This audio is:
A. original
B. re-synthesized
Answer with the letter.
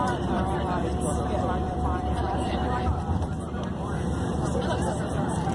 B